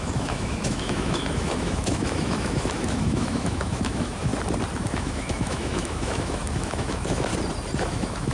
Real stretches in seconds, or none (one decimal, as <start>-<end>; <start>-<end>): 4.3-4.9; 7.3-7.8

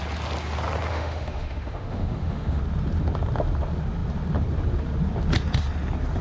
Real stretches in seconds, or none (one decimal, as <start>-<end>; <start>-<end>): 0.0-0.9; 2.6-6.2

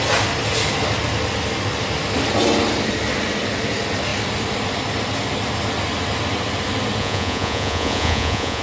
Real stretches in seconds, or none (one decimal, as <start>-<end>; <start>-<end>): 0.0-7.0

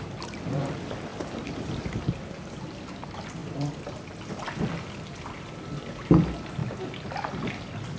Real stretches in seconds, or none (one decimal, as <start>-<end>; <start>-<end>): 0.0-8.0

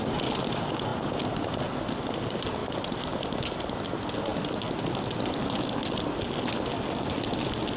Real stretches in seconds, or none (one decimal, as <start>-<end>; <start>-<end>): 0.0-7.8

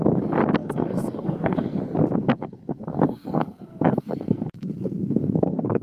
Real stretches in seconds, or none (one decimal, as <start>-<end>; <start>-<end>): 0.0-0.6; 1.8-2.2